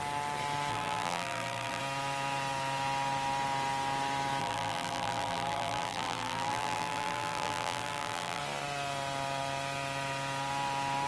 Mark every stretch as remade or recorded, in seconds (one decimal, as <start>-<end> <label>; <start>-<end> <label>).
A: 0.0-0.7 recorded; 0.7-1.8 remade; 1.8-4.4 recorded; 4.4-8.4 remade; 8.4-11.1 recorded

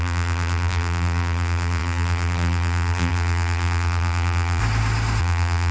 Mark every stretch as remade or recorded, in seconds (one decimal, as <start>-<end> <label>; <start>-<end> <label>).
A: 0.0-4.6 remade; 4.6-5.2 recorded; 5.2-5.7 remade

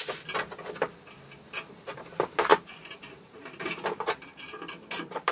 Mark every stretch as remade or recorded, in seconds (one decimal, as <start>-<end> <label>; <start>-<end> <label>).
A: 0.0-2.5 recorded; 2.5-5.3 remade

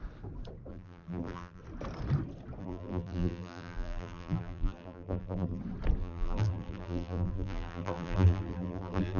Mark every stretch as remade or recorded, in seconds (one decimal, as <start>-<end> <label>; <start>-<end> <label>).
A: 0.0-0.7 recorded; 0.7-1.6 remade; 1.6-2.6 recorded; 2.6-5.6 remade; 5.6-6.0 recorded; 6.0-9.2 remade